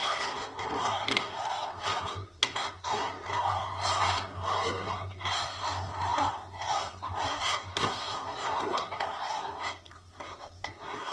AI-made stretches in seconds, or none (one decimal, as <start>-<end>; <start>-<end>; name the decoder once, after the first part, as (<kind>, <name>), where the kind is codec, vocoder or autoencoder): 0.0-11.1 (codec, SNAC)